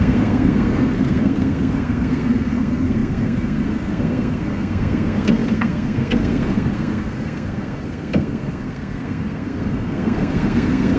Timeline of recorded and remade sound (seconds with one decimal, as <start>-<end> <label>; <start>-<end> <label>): 0.0-11.0 remade